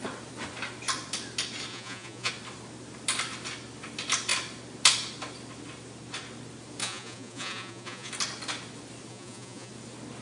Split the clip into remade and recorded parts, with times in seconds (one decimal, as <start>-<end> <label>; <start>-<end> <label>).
0.0-1.7 recorded; 1.7-2.3 remade; 2.3-6.8 recorded; 6.8-8.1 remade; 8.1-9.1 recorded; 9.1-9.7 remade; 9.7-10.2 recorded